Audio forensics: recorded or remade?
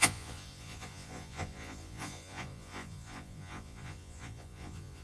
remade